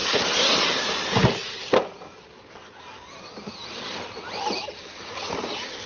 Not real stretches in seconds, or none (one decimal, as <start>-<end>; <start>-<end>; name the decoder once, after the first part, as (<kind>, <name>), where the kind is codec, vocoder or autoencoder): none